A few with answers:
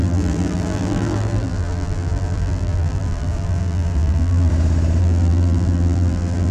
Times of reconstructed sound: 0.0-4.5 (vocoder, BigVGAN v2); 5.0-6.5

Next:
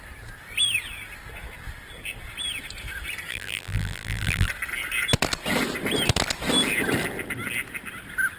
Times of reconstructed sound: 3.3-4.5 (vocoder, BigVGAN v2)

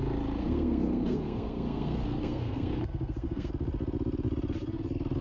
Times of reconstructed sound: 0.4-3.5 (codec, SNAC)

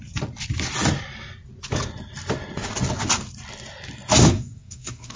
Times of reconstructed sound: 4.2-5.2 (codec, SNAC)

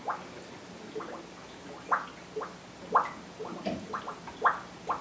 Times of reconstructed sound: none

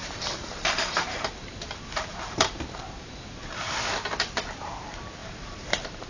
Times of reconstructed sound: 0.0-3.7 (vocoder, BigVGAN v2); 5.2-6.1

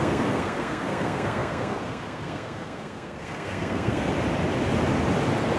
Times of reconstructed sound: 0.0-4.1 (codec, SNAC)